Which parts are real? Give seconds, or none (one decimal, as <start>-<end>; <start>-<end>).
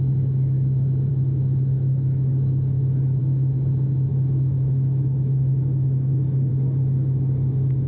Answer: 0.0-1.1; 3.2-4.1; 6.5-7.9